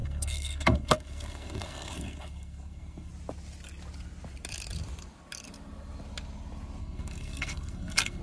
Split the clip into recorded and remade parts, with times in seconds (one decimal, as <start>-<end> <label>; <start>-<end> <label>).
0.0-3.1 remade; 3.1-6.8 recorded; 6.8-8.2 remade